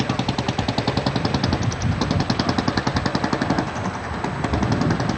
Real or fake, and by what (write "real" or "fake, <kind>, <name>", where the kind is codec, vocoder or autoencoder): real